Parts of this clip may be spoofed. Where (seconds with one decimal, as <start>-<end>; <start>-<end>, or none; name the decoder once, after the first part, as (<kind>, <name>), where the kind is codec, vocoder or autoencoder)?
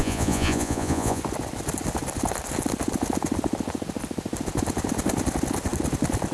0.0-1.2 (vocoder, Vocos)